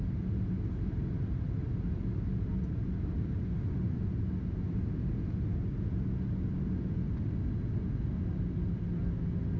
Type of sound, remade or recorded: recorded